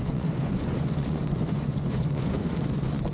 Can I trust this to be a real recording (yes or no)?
no